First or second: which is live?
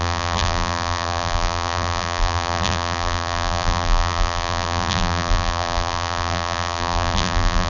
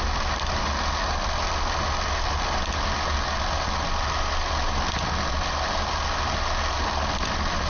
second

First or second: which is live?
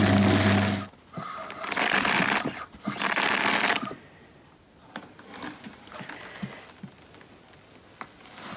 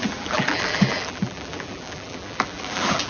first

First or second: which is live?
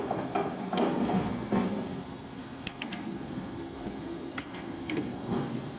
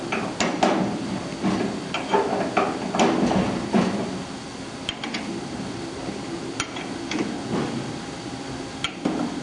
second